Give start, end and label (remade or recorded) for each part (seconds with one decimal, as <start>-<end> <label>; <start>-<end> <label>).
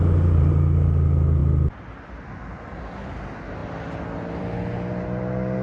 0.0-5.6 recorded